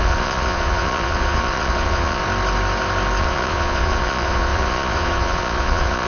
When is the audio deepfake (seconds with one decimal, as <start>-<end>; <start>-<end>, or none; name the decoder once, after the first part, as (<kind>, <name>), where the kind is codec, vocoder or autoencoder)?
0.0-2.2 (vocoder, Vocos); 3.2-6.1